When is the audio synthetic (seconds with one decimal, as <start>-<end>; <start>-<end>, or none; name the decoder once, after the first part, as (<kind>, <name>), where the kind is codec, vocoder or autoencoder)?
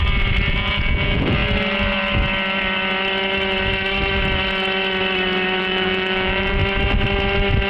0.5-1.4 (vocoder, Vocos); 5.6-6.6